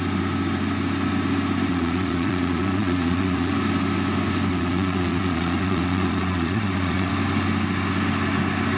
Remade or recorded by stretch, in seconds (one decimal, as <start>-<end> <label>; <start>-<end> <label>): 0.0-1.7 recorded; 1.7-3.5 remade; 3.5-4.5 recorded; 4.5-7.1 remade; 7.1-8.8 recorded